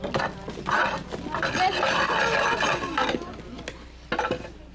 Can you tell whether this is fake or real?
real